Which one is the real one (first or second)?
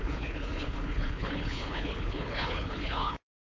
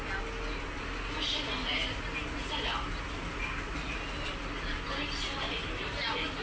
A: second